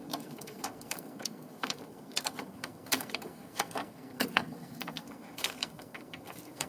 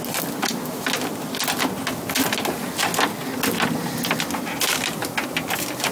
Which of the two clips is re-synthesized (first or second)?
first